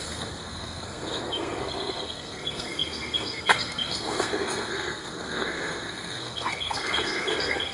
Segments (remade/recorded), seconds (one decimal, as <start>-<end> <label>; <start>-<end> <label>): 0.0-7.7 remade